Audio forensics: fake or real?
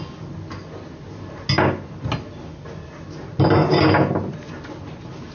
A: real